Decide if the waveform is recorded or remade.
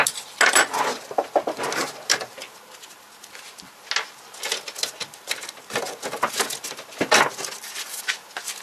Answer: recorded